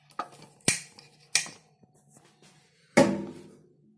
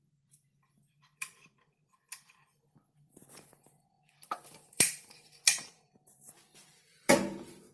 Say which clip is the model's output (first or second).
second